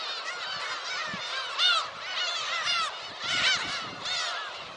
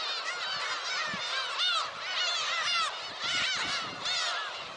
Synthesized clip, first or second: first